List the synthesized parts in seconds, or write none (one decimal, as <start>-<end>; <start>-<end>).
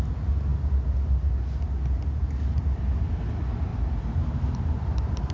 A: 3.7-5.3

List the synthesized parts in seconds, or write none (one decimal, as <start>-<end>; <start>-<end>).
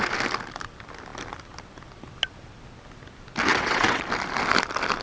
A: 3.5-4.0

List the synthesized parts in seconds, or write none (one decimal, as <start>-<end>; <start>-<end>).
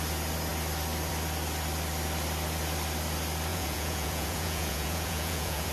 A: 3.5-5.7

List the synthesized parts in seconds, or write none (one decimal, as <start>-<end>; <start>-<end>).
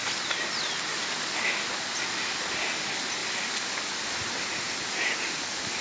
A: none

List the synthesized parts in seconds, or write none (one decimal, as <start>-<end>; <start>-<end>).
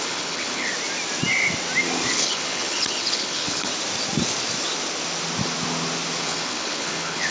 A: 0.0-0.7; 2.1-3.7; 6.2-7.3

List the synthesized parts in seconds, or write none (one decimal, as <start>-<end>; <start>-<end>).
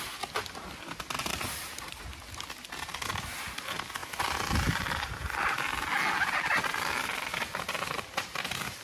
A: none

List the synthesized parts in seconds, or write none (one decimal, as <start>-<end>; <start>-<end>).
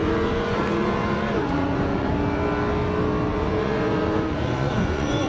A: 0.0-2.1; 3.3-5.3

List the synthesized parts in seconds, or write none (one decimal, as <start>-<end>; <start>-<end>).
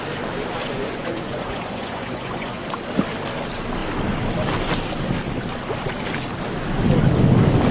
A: 0.6-2.8